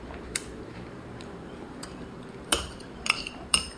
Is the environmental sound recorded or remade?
remade